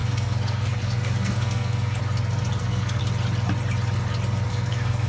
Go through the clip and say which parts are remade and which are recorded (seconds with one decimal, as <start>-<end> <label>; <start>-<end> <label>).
0.0-2.0 remade; 2.0-2.6 recorded; 2.6-3.0 remade; 3.0-4.5 recorded; 4.5-5.1 remade